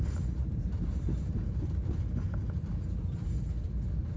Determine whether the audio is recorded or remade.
remade